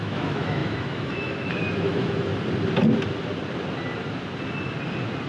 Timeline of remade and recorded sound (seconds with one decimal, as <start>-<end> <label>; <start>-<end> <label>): 0.0-2.3 remade; 2.3-5.3 recorded